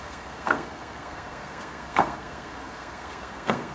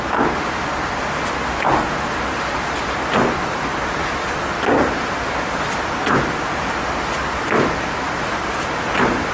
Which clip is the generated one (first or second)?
first